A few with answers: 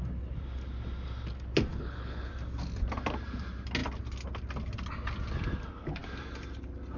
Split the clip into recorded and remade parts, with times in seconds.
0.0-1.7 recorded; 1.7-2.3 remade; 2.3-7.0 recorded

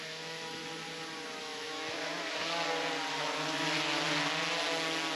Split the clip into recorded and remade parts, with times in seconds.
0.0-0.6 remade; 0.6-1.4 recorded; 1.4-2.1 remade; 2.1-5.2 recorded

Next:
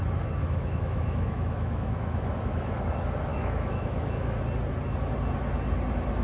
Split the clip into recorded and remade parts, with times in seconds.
0.0-0.4 recorded; 0.4-2.8 remade; 2.8-3.3 recorded; 3.3-4.4 remade; 4.4-6.2 recorded